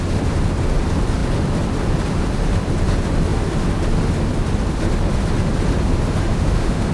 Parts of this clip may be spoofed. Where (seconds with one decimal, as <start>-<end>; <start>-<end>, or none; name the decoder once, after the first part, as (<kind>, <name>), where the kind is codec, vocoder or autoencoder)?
6.3-6.9 (autoencoder, DAC-VAE)